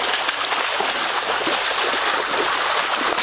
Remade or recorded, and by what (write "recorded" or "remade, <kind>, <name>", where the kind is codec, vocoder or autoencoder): recorded